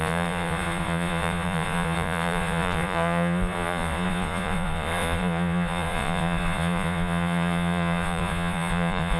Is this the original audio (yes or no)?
no